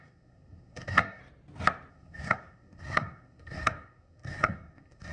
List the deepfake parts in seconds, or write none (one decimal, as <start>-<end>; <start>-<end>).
0.0-1.2; 1.9-5.1